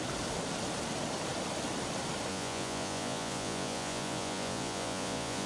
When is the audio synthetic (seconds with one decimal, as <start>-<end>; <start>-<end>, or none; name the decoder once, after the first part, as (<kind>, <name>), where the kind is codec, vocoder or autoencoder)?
2.3-5.5 (vocoder, Vocos)